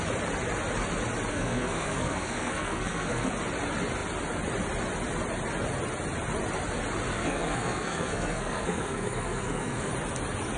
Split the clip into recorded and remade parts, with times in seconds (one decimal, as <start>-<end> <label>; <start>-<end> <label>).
0.0-1.3 recorded; 1.3-3.3 remade; 3.3-7.1 recorded; 7.1-9.9 remade; 9.9-10.6 recorded